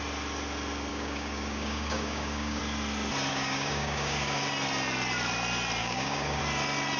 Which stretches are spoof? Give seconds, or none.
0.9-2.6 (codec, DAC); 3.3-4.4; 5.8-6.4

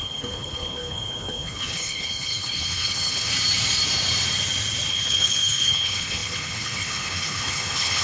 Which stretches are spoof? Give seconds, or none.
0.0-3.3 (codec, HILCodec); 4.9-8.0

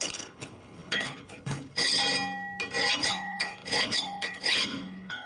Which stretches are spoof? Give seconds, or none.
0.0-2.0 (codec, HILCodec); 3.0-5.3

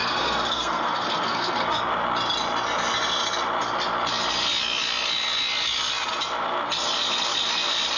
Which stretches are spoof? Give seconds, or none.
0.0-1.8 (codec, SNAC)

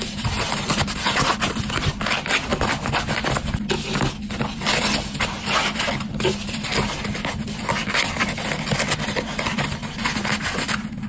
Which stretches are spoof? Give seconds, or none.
none

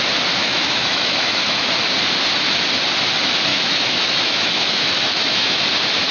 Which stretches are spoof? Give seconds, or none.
0.4-1.7 (autoencoder, DAC-VAE); 3.5-5.6